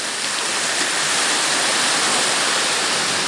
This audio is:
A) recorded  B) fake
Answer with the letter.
A